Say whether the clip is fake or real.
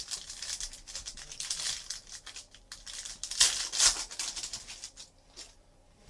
real